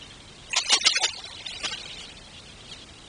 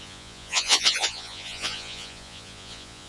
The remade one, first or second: second